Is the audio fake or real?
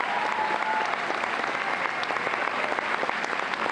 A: real